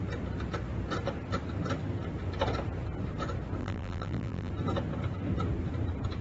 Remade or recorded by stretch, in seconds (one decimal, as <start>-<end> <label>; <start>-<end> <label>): 0.0-3.6 recorded; 3.6-4.5 remade; 4.5-6.2 recorded